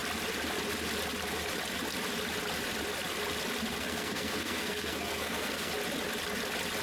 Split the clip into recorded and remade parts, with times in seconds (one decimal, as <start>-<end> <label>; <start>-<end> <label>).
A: 0.0-3.7 recorded; 3.7-5.7 remade; 5.7-6.8 recorded